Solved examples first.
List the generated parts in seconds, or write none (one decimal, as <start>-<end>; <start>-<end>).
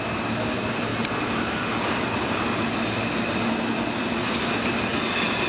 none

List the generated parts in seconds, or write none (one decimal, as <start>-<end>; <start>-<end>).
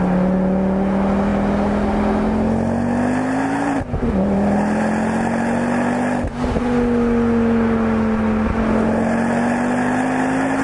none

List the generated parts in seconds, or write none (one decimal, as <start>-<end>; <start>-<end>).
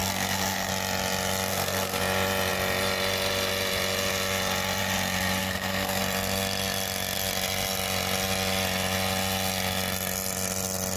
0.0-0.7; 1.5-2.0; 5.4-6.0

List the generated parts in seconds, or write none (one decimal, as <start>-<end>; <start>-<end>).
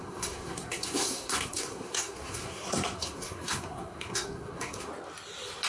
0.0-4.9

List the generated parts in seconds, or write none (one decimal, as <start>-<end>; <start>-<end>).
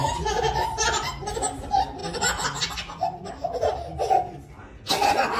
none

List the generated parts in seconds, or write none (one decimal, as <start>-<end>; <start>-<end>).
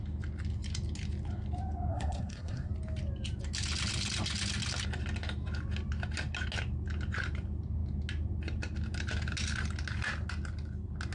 1.9-2.7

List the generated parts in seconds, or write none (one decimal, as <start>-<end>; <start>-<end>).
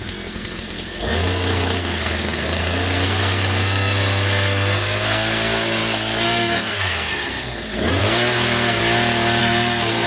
0.0-8.8; 9.4-10.1